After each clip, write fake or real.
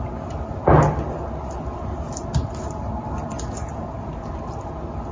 real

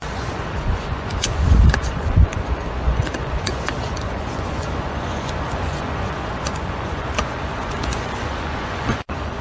fake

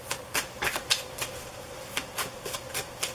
real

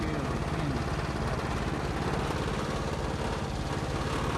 real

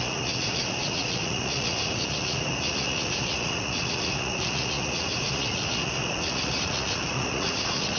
fake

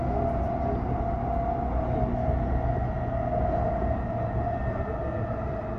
real